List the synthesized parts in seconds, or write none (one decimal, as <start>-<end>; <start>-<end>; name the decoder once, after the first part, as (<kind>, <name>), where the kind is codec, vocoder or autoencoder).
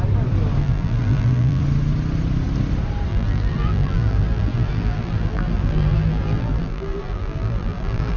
0.6-1.6 (vocoder, BigVGAN v2); 3.1-8.2